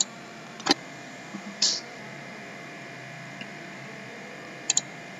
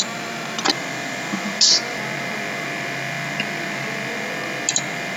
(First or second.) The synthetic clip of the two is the first